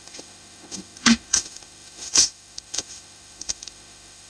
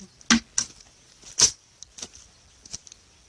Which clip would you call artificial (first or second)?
first